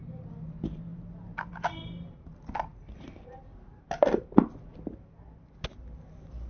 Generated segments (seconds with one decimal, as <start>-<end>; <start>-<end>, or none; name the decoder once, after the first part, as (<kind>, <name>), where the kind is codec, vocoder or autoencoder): none